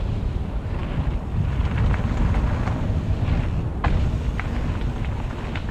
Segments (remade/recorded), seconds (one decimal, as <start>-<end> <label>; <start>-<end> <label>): 0.0-5.7 recorded